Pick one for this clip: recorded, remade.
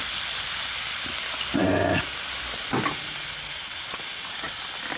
recorded